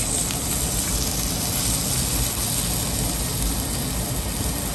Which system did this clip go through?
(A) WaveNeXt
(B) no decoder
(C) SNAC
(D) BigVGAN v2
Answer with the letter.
B